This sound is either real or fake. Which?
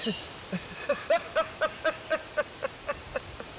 fake